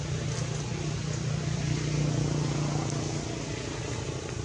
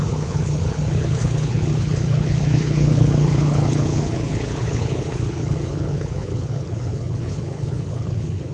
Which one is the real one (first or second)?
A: first